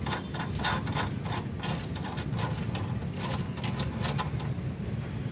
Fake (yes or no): no